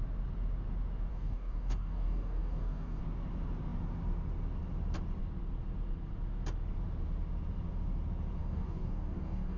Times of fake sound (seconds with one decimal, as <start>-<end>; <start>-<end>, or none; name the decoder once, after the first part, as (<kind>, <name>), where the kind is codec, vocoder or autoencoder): 1.1-3.0 (codec, DAC); 8.4-9.6